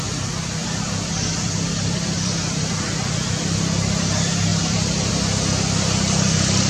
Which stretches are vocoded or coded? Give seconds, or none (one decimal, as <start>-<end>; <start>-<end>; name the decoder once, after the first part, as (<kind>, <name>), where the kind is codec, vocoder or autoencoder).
0.6-2.7 (vocoder, BigVGAN v2); 4.5-5.1